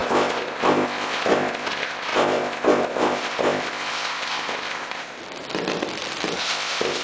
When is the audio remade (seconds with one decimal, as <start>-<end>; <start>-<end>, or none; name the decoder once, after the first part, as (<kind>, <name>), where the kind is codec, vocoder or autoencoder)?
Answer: 0.0-5.2 (codec, ZipCodec); 6.4-7.0